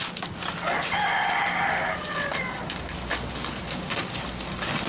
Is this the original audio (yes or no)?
yes